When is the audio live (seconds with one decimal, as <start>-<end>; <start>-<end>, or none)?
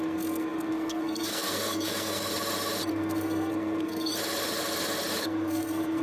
2.3-2.9; 4.1-5.2